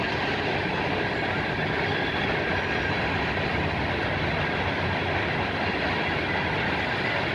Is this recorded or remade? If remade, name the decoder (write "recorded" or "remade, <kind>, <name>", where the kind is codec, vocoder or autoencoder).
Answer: recorded